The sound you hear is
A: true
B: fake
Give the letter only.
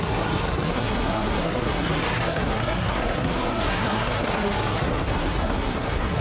B